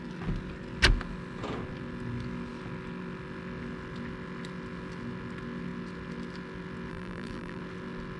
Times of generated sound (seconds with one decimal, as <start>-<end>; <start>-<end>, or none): 6.9-7.6